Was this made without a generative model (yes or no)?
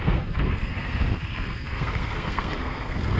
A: no